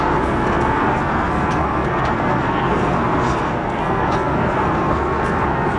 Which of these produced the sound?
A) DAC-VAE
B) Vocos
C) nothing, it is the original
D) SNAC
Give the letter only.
D